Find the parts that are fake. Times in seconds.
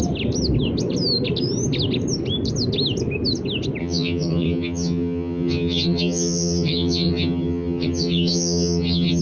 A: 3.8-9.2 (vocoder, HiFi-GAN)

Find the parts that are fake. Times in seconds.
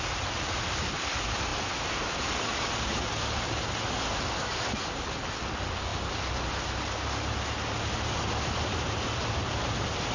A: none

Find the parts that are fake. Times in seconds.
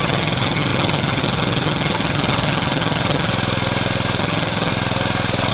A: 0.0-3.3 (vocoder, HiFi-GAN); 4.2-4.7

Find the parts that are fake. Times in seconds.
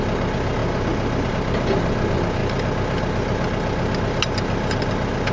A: none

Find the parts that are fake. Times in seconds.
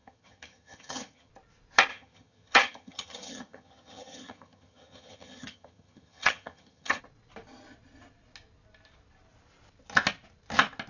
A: 0.0-1.3 (vocoder, HiFi-GAN); 1.9-7.0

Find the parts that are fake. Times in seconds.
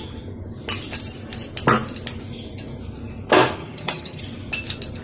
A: 3.6-4.2 (vocoder, HiFi-GAN)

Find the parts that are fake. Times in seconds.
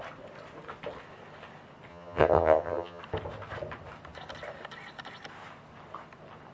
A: 1.9-3.0 (vocoder, HiFi-GAN)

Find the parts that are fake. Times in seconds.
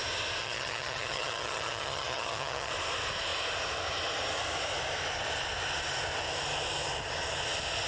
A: 0.4-2.7 (vocoder, HiFi-GAN)